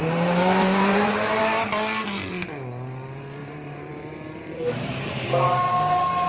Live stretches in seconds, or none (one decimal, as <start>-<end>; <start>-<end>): 1.4-3.4; 5.3-6.3